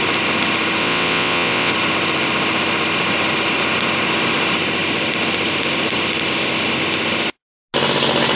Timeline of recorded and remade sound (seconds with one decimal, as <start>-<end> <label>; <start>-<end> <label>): 0.0-0.8 recorded; 0.8-1.7 remade; 1.7-8.4 recorded